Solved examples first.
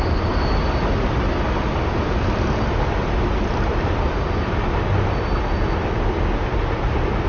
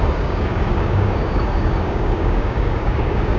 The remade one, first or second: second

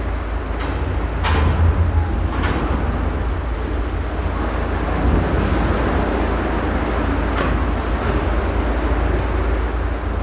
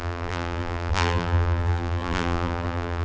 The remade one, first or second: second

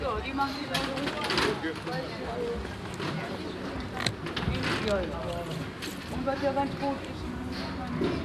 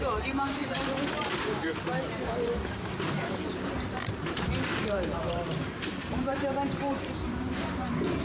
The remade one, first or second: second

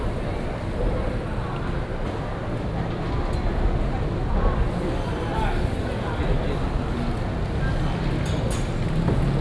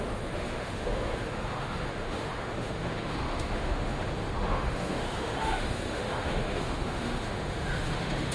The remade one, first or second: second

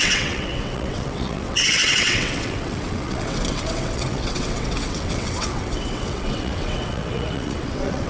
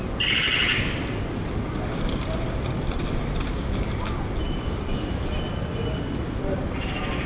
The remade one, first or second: first